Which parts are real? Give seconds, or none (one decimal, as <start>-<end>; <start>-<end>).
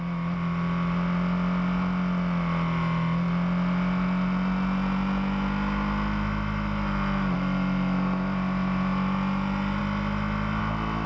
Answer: 0.0-11.1